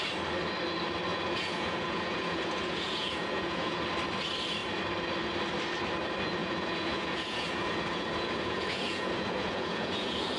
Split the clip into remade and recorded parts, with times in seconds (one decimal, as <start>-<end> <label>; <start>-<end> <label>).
0.0-1.1 recorded; 1.1-3.8 remade; 3.8-6.4 recorded; 6.4-10.4 remade